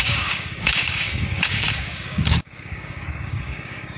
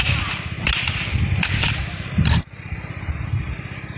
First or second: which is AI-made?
first